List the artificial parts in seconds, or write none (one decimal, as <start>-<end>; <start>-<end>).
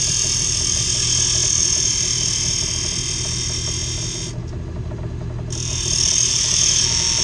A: none